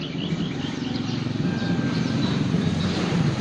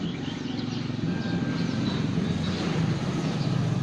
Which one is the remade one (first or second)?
first